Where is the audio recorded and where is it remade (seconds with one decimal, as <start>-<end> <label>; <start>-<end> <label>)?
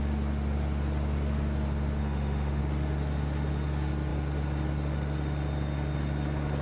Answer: 0.0-2.0 recorded; 2.0-2.6 remade; 2.6-6.6 recorded